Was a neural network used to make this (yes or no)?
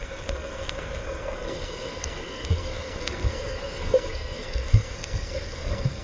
yes